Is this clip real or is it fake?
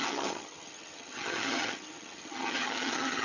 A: fake